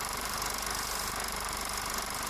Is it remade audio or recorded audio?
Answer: recorded